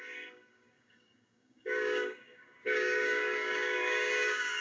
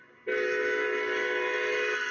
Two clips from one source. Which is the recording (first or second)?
second